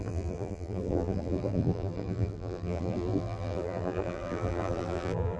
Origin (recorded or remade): remade